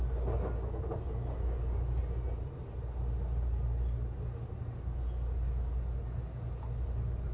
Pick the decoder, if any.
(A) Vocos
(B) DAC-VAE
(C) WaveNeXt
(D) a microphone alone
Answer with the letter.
D